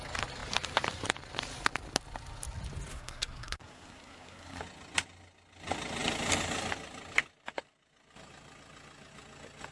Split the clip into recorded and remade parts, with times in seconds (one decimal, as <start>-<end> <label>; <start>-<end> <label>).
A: 0.0-2.9 recorded; 2.9-4.6 remade; 4.6-9.7 recorded